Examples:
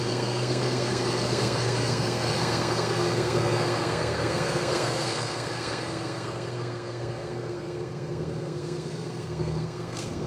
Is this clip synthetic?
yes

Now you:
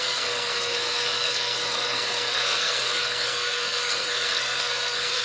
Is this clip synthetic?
yes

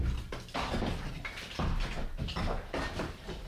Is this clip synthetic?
no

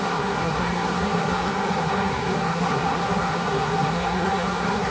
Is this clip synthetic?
yes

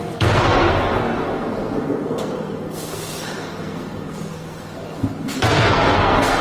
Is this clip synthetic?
yes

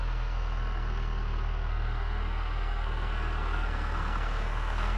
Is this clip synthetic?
yes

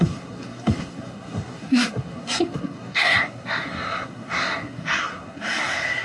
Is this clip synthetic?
yes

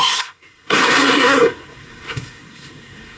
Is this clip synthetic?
yes